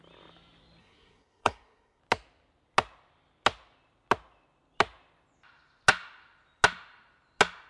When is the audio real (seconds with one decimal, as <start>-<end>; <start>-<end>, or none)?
0.0-0.8; 2.0-7.7